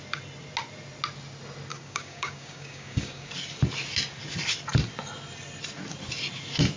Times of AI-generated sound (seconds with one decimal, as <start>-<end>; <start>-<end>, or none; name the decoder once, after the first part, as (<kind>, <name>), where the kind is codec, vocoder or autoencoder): 1.7-3.3 (codec, DAC)